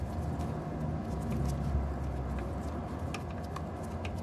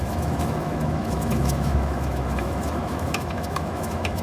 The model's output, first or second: second